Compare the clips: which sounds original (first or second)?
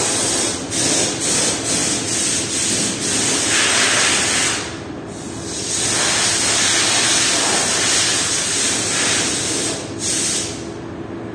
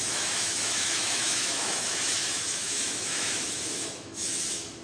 first